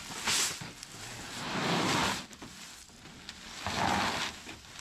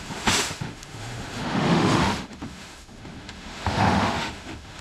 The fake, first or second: second